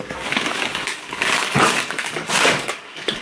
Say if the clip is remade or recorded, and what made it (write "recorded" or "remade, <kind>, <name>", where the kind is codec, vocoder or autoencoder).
remade, codec, DAC